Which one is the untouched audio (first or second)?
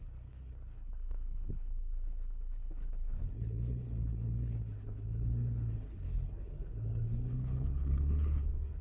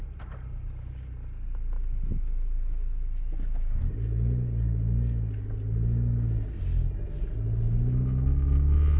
second